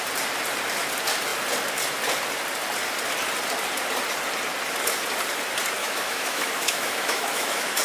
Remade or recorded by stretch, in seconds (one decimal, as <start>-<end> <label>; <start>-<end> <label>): 0.0-5.8 recorded; 5.8-7.8 remade